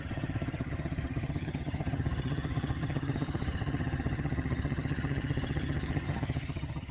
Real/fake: fake